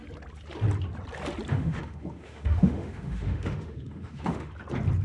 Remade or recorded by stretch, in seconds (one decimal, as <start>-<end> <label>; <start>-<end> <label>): 0.0-1.5 recorded; 1.5-4.5 remade; 4.5-5.0 recorded